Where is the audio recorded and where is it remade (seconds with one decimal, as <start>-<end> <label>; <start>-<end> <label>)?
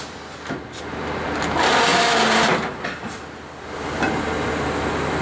0.0-5.2 recorded